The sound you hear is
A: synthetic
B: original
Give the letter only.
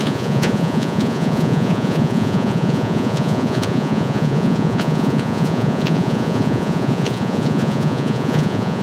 A